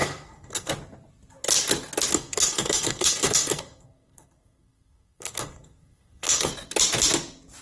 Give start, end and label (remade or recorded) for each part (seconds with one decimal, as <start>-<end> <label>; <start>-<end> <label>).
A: 0.0-0.7 remade; 0.7-2.1 recorded; 2.1-6.5 remade; 6.5-7.6 recorded